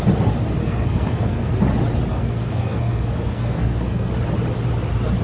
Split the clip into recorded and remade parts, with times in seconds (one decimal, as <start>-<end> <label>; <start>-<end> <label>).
0.0-0.6 recorded; 0.6-1.5 remade; 1.5-2.1 recorded; 2.1-4.1 remade; 4.1-5.2 recorded